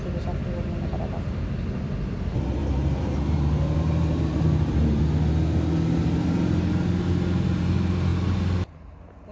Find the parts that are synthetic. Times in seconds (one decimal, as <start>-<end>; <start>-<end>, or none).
2.6-5.0

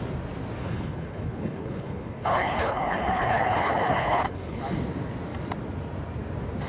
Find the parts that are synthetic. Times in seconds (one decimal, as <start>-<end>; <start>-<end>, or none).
0.6-4.6

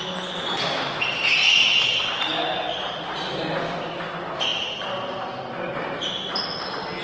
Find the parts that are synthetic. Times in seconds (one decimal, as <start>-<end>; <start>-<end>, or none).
1.2-2.0; 4.5-5.4

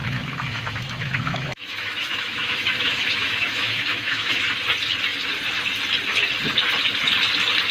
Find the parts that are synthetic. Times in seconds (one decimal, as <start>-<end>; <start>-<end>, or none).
0.0-4.5

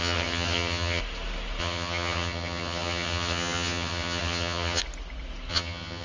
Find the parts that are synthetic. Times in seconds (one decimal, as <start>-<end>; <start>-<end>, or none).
0.0-1.0; 1.6-4.8; 5.5-6.0